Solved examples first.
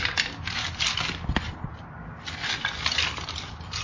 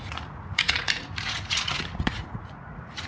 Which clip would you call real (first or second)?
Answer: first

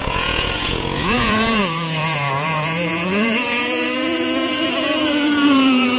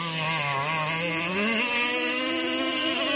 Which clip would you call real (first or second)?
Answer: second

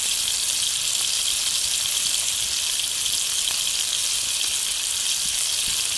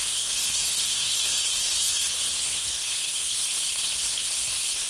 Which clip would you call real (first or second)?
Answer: first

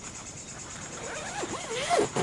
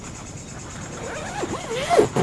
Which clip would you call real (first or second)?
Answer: second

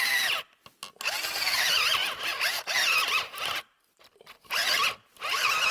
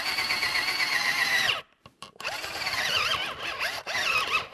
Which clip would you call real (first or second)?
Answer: first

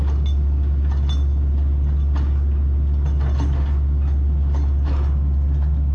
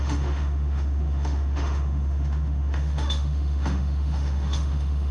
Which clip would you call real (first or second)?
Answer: first